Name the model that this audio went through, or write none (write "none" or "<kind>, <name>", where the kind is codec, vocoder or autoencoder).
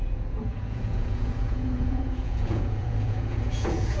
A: vocoder, Vocos